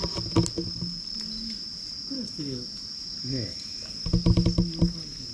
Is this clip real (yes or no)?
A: yes